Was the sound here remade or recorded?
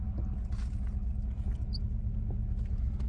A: recorded